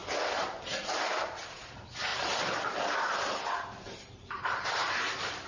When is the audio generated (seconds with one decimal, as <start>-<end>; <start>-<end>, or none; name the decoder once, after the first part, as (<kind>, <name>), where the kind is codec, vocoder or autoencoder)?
2.1-5.5 (vocoder, BigVGAN v2)